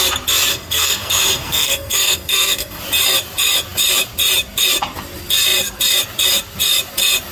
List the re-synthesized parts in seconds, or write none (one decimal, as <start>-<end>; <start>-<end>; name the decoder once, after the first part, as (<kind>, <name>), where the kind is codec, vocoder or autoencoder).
0.5-2.8 (codec, SNAC)